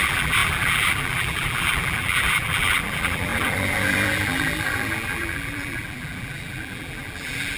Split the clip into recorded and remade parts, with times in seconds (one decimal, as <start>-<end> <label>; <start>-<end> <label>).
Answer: 0.0-7.6 remade

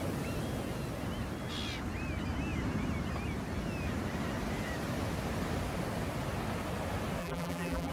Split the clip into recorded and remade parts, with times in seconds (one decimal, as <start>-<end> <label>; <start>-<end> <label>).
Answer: 0.0-7.2 recorded; 7.2-7.9 remade

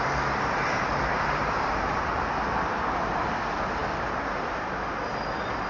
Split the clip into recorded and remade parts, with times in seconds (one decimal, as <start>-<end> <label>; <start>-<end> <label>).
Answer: 0.0-0.6 recorded; 0.6-2.0 remade; 2.0-5.7 recorded

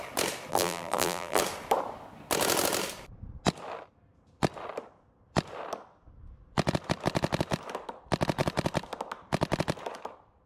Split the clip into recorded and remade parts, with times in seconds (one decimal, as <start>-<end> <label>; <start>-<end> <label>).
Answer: 0.0-0.5 recorded; 0.5-1.4 remade; 1.4-10.5 recorded

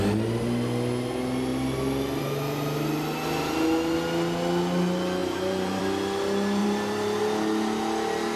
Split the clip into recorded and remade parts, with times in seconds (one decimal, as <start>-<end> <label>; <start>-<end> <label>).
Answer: 0.0-5.2 recorded; 5.2-5.8 remade; 5.8-6.6 recorded; 6.6-7.2 remade; 7.2-8.4 recorded

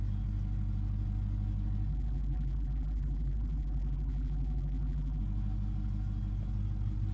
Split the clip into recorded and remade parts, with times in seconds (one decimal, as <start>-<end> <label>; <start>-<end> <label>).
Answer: 0.0-1.9 recorded; 1.9-5.2 remade; 5.2-7.1 recorded